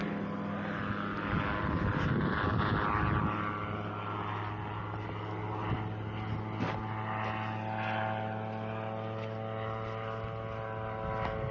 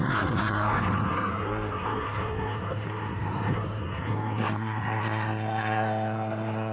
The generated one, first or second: second